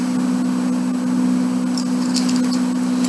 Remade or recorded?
recorded